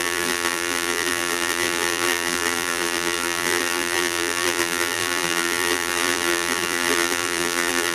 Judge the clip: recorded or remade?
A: remade